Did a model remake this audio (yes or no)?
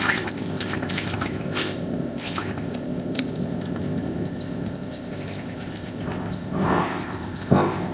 yes